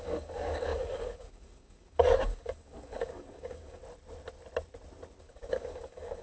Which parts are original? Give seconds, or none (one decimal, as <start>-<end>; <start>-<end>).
3.8-5.2

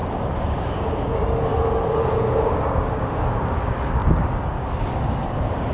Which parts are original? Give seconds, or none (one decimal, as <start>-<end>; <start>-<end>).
none